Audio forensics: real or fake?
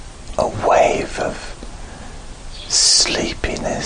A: real